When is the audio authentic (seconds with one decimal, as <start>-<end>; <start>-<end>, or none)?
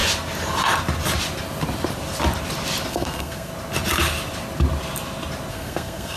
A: 0.0-2.9; 3.5-5.5